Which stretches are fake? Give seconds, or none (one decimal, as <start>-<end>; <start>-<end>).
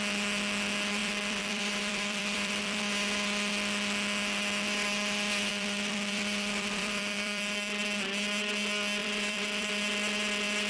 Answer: 1.0-2.8; 5.5-7.8; 9.0-9.7